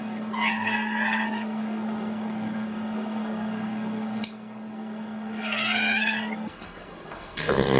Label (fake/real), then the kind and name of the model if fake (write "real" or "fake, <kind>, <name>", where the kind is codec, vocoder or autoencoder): fake, codec, SNAC